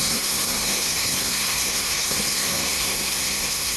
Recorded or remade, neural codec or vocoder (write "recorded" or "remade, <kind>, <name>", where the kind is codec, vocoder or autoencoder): remade, codec, SNAC